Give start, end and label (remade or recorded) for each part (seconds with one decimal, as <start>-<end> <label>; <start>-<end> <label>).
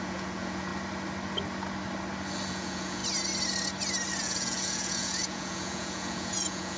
0.0-0.7 remade; 0.7-2.5 recorded; 2.5-3.0 remade; 3.0-4.2 recorded; 4.2-6.8 remade